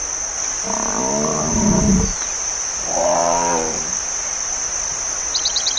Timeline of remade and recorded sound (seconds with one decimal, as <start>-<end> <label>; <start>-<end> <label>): 0.0-3.2 recorded; 3.2-3.9 remade; 3.9-5.8 recorded